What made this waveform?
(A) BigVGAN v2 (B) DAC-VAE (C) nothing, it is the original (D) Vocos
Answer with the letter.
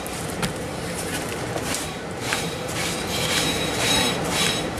A